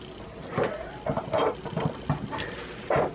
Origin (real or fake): real